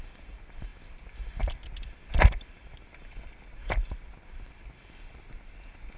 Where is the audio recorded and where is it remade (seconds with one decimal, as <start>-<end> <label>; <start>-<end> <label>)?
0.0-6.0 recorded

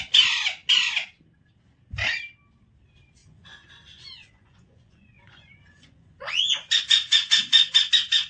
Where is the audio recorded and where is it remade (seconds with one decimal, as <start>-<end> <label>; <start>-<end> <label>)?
0.0-3.2 recorded; 3.2-7.9 remade; 7.9-8.3 recorded

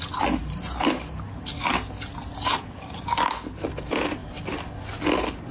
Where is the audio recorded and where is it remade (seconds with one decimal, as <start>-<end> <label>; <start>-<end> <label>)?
0.0-5.5 recorded

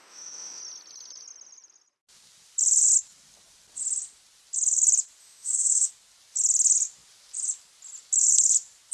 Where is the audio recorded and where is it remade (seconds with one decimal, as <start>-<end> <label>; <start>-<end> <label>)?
0.0-0.6 remade; 0.6-5.2 recorded; 5.2-5.9 remade; 5.9-8.9 recorded

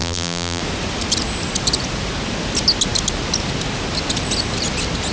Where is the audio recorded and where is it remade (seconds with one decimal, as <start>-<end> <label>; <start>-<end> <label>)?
0.0-0.6 remade; 0.6-5.1 recorded